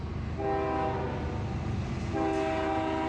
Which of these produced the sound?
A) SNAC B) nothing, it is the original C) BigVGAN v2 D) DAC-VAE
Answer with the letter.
B